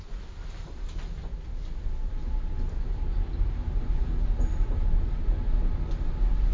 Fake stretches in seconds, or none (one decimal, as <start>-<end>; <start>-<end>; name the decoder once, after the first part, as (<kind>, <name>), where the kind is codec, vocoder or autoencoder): none